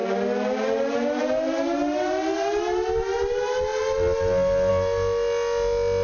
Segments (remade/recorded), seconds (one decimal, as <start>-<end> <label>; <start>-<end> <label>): 0.0-6.0 recorded